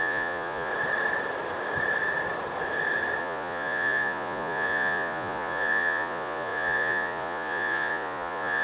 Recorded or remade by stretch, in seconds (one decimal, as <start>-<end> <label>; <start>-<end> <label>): 0.0-0.7 remade; 0.7-3.2 recorded; 3.2-8.6 remade